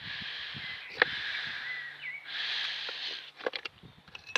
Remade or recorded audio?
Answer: recorded